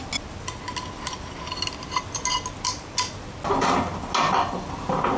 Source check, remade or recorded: recorded